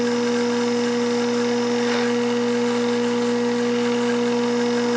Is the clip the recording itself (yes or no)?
yes